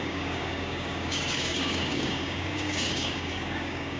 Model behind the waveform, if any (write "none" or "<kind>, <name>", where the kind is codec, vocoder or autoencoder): codec, DAC